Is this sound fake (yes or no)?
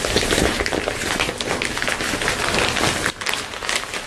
no